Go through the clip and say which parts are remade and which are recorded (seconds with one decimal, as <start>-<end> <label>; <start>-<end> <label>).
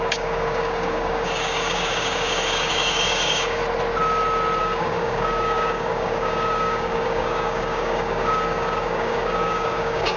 0.0-3.6 remade; 3.6-4.6 recorded; 4.6-10.2 remade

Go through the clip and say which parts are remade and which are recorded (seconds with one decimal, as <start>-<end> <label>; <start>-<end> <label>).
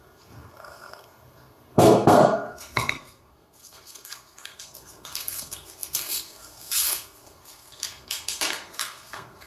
0.0-9.5 remade